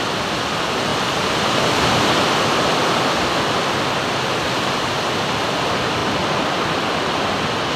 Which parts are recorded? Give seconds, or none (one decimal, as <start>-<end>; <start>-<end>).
0.0-7.8